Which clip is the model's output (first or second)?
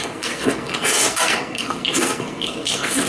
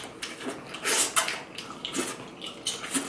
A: first